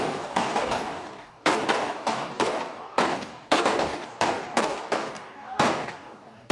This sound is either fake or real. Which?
fake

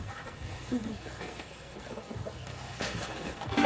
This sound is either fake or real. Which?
fake